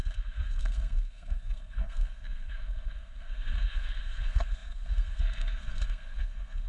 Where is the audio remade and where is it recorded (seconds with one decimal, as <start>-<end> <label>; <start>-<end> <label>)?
0.0-6.7 remade